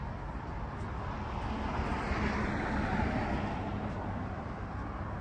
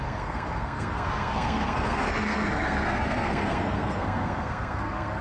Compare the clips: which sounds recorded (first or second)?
first